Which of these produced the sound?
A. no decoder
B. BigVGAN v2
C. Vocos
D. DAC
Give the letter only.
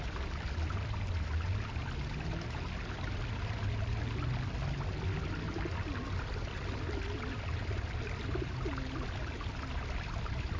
A